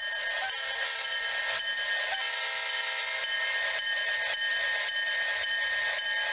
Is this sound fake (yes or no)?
no